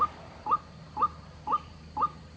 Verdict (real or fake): fake